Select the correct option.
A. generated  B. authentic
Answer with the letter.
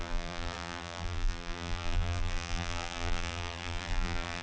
A